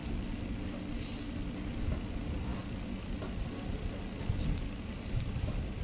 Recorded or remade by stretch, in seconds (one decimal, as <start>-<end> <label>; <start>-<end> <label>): 0.0-5.8 recorded